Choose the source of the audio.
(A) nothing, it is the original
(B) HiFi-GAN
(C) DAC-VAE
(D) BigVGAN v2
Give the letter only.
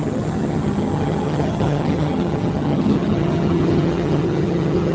B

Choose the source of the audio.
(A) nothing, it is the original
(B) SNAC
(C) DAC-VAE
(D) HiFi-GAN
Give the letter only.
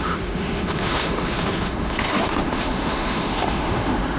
C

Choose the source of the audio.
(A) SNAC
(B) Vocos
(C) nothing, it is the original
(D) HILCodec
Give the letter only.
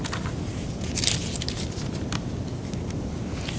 C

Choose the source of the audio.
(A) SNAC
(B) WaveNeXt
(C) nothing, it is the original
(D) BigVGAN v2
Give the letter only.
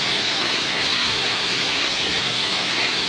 A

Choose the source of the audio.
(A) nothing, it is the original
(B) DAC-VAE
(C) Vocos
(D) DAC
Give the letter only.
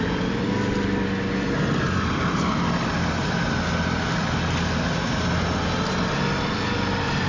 A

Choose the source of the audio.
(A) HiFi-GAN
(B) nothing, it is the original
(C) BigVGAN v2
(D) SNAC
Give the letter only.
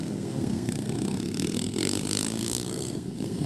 D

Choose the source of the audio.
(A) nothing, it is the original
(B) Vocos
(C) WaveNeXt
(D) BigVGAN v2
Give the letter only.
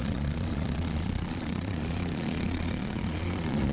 B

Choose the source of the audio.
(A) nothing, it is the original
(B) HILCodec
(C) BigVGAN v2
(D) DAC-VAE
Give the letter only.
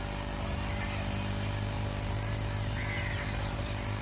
A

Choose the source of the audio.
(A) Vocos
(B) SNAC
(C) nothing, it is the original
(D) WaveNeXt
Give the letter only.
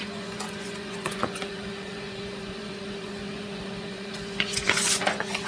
A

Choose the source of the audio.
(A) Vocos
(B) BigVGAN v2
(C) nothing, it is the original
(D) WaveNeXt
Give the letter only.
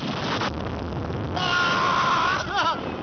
C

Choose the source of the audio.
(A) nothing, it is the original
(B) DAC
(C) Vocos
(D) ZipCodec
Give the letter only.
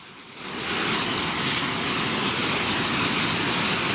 A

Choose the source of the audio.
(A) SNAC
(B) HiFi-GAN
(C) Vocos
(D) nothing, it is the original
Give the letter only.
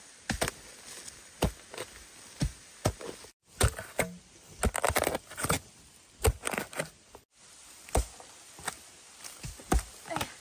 D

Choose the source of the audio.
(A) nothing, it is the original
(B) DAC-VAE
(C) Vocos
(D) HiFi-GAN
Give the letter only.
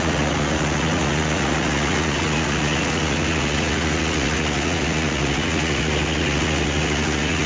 C